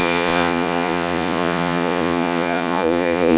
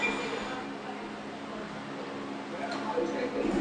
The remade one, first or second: first